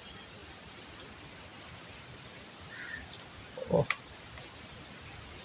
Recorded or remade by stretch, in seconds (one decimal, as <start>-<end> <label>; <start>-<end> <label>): 0.0-5.4 recorded